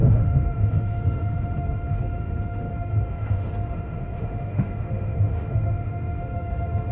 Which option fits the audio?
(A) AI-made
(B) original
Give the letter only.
A